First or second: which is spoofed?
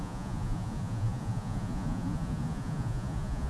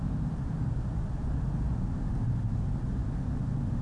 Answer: first